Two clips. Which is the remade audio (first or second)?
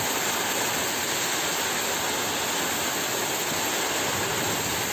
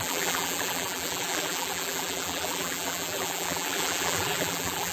second